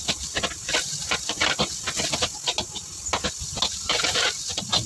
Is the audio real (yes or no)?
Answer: yes